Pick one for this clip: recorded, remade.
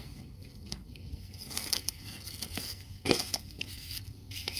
remade